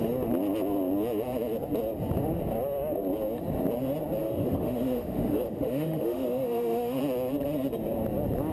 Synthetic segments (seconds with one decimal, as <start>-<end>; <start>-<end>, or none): 4.2-7.0